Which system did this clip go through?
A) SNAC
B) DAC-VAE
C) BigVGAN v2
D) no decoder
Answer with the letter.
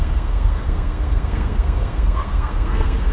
A